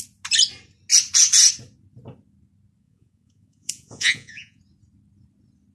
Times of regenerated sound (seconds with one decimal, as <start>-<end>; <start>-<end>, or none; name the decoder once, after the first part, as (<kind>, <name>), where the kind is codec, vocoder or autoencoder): 2.8-4.6 (vocoder, Vocos)